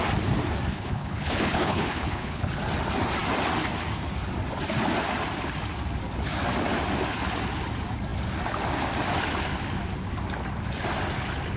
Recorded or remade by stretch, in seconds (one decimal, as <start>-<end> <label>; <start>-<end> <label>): 0.0-0.7 recorded; 0.7-2.5 remade; 2.5-11.6 recorded